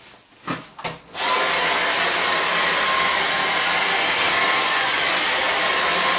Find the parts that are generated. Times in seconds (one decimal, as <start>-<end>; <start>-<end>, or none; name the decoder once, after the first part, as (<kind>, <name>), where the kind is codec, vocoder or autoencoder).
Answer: 4.6-5.1 (vocoder, Vocos)